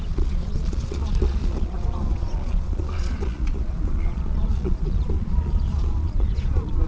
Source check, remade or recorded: remade